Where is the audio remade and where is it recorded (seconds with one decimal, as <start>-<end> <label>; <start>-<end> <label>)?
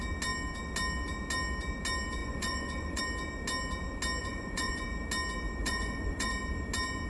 0.0-2.2 recorded; 2.2-3.0 remade; 3.0-4.2 recorded; 4.2-4.8 remade; 4.8-5.6 recorded; 5.6-6.3 remade; 6.3-7.1 recorded